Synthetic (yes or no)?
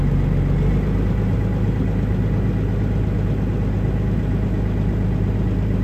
no